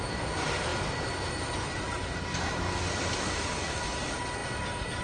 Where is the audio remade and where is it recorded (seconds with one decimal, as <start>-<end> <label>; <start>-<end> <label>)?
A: 0.0-5.0 remade